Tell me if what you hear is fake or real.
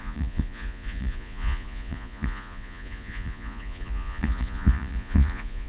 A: fake